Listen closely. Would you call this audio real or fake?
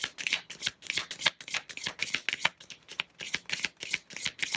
real